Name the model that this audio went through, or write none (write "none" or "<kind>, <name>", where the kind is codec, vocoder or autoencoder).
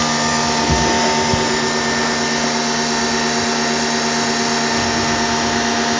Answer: none